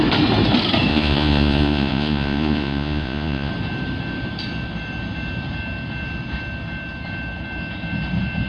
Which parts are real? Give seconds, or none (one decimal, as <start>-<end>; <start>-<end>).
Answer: 0.0-0.9; 3.5-8.5